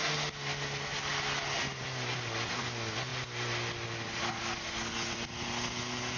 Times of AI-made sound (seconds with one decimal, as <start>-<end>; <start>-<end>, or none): none